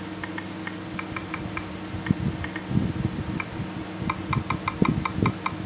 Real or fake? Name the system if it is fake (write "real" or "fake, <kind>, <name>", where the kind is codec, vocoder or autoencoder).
real